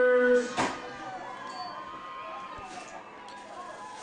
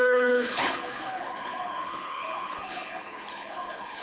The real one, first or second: first